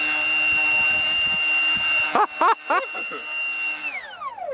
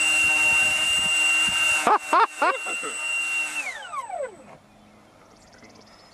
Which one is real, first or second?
first